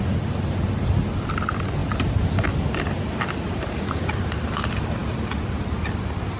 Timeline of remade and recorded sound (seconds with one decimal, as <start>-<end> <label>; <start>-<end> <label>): 0.0-6.4 recorded

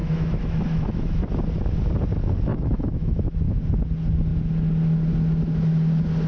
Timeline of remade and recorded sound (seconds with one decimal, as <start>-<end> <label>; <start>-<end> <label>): 0.0-1.2 remade; 1.2-2.5 recorded; 2.5-3.6 remade; 3.6-6.3 recorded